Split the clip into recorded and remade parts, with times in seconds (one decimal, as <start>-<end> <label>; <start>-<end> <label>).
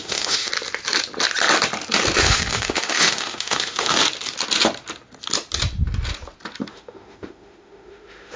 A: 0.0-0.5 remade; 0.5-2.2 recorded; 2.2-4.0 remade; 4.0-6.7 recorded; 6.7-8.4 remade